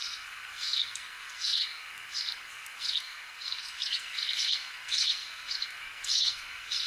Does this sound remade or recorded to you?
remade